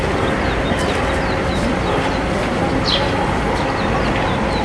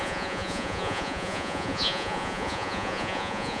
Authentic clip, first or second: first